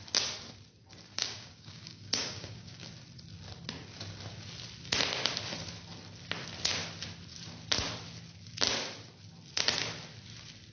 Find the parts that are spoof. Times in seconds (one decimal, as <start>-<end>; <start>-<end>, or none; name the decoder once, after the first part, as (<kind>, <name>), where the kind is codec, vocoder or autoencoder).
1.1-2.9 (codec, DAC)